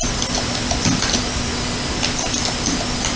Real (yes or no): yes